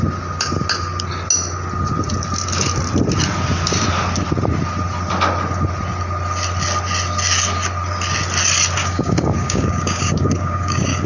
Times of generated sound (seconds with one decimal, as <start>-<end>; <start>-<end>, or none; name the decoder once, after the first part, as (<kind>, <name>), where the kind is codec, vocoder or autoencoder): 8.8-11.1 (codec, DAC)